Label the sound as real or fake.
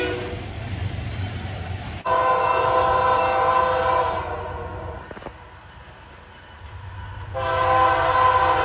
real